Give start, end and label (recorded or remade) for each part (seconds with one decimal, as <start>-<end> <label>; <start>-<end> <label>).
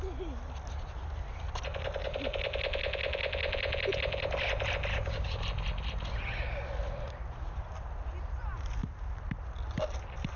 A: 0.0-4.9 recorded; 4.9-5.4 remade; 5.4-10.4 recorded